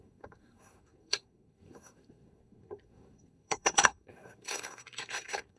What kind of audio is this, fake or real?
fake